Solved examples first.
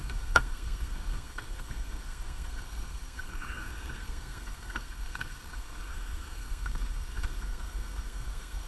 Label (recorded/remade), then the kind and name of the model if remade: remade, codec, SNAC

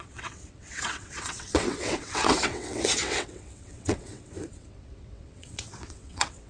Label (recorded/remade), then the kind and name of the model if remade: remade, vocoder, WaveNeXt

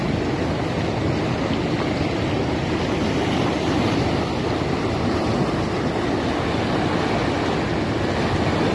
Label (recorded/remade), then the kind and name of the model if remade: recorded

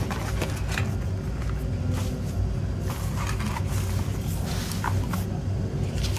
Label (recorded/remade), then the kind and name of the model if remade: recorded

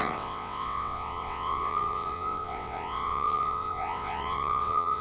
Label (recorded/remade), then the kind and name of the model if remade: remade, vocoder, WaveNeXt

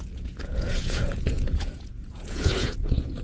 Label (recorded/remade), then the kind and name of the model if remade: remade, vocoder, Vocos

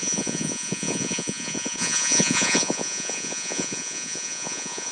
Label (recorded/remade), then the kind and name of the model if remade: remade, vocoder, Vocos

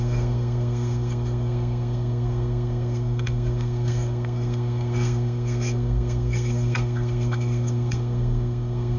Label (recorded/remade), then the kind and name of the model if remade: remade, codec, SNAC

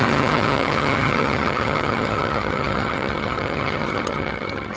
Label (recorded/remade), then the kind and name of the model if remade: remade, vocoder, HiFi-GAN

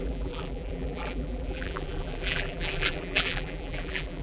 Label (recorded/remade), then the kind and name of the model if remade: remade, vocoder, BigVGAN v2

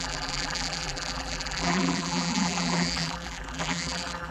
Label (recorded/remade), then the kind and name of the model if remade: remade, vocoder, BigVGAN v2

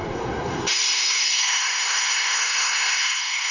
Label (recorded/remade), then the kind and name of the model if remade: remade, codec, SNAC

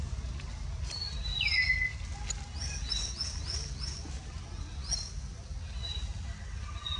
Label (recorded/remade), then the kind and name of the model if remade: recorded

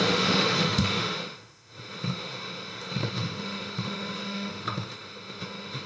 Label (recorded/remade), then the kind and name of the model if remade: remade, autoencoder, DAC-VAE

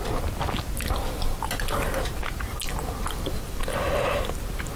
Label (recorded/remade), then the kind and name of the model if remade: recorded